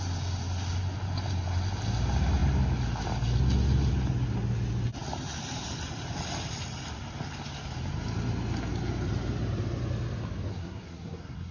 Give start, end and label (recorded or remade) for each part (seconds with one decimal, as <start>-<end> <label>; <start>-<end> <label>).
0.0-10.5 recorded; 10.5-11.5 remade